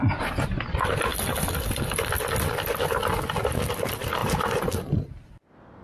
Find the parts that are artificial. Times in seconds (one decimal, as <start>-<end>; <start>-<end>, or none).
none